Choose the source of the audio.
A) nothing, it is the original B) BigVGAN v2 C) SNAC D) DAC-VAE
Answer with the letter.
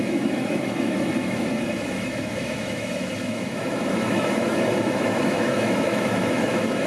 D